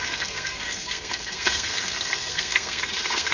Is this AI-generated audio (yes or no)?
yes